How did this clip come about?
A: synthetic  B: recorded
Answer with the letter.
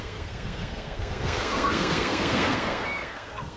A